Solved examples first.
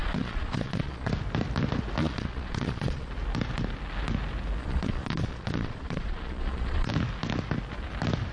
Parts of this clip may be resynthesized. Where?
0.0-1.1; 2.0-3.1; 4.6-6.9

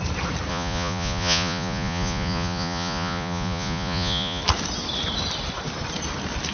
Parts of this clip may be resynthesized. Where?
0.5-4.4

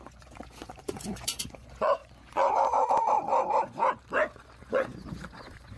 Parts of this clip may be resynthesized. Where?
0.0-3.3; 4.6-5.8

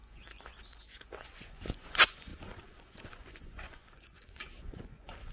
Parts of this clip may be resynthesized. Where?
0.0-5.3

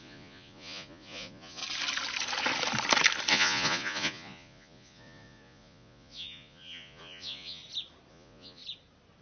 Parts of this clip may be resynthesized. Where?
0.0-1.6; 3.3-7.6; 8.1-8.6